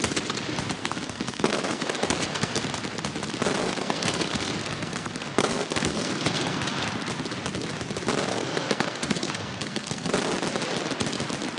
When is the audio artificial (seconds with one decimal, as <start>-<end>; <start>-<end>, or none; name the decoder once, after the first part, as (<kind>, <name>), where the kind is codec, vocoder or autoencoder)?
0.8-2.6 (codec, SNAC); 3.6-6.9; 8.3-10.1